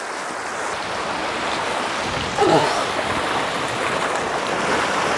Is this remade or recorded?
remade